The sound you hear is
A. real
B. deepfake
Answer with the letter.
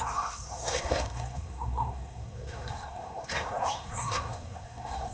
B